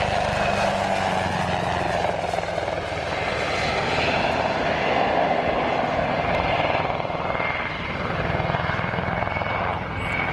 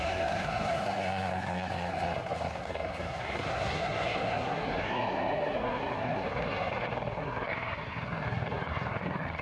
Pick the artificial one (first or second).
second